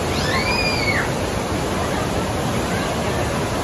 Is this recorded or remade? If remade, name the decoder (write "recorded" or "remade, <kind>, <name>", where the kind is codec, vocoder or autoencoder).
recorded